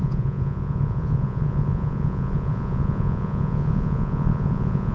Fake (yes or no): yes